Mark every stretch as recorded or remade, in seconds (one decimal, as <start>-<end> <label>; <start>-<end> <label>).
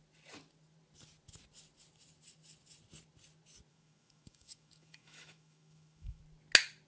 0.0-3.7 recorded; 3.7-6.2 remade; 6.2-6.9 recorded